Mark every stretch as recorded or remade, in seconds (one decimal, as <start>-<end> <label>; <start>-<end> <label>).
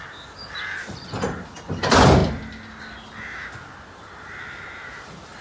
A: 0.0-5.4 recorded